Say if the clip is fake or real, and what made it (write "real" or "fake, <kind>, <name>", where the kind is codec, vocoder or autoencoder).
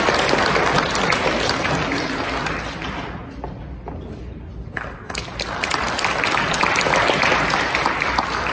real